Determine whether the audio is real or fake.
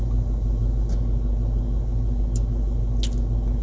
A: real